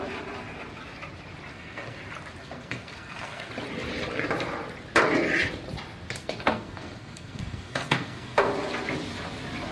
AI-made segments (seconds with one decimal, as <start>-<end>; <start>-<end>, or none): 1.5-2.0; 2.4-3.5; 6.2-8.5

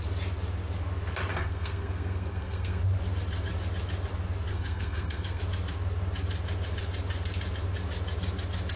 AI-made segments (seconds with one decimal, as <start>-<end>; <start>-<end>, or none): 1.3-2.8; 4.5-5.4